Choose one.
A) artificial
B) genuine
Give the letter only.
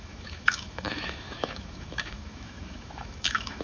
A